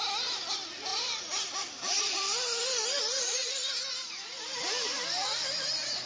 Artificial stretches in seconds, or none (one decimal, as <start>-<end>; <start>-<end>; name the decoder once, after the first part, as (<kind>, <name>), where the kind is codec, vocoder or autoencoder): none

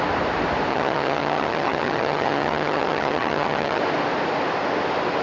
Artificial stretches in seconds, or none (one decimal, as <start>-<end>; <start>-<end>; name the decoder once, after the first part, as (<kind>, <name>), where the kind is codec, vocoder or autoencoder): 0.7-3.8 (vocoder, HiFi-GAN)

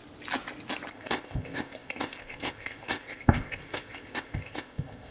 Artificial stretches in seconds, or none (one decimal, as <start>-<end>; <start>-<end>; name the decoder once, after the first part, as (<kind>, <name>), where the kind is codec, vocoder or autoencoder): 0.9-5.1 (codec, ZipCodec)